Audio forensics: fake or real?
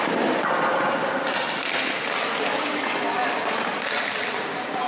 real